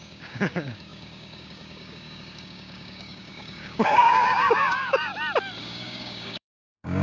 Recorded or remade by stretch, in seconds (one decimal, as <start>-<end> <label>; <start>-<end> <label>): 0.0-5.1 remade; 5.1-5.6 recorded; 5.6-7.0 remade

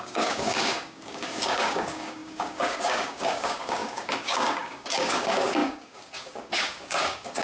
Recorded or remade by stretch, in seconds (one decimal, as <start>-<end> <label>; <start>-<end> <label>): 0.0-7.4 remade

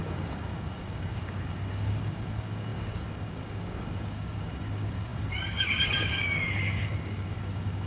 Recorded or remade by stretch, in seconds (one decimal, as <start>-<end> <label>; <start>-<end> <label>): 0.0-7.9 remade

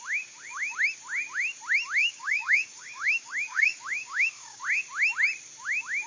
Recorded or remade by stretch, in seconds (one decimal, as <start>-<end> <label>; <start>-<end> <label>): 0.0-2.0 recorded; 2.0-4.6 remade; 4.6-6.1 recorded